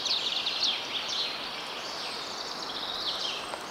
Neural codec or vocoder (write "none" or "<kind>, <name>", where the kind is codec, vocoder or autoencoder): none